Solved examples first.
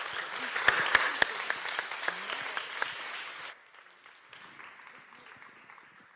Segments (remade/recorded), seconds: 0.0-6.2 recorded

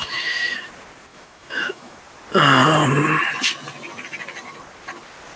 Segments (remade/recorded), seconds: 0.0-0.7 remade; 0.7-1.1 recorded; 1.1-2.0 remade; 2.0-5.4 recorded

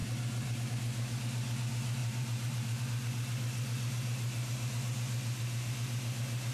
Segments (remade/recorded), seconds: 0.0-0.7 remade; 0.7-2.0 recorded; 2.0-2.8 remade; 2.8-6.5 recorded